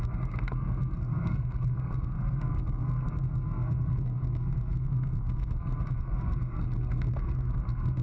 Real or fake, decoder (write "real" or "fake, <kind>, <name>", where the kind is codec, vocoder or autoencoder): fake, codec, SNAC